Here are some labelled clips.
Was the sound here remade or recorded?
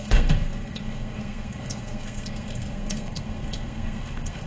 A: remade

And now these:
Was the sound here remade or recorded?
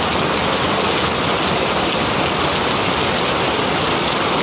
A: recorded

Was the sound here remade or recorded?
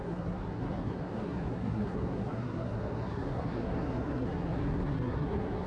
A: remade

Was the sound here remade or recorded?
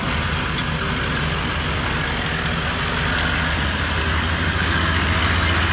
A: recorded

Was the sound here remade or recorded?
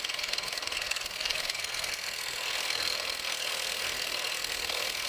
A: remade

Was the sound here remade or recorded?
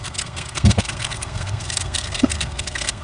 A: remade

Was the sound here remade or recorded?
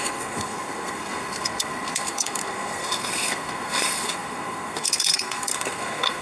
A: remade